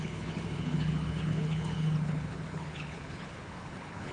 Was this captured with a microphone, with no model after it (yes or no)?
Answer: no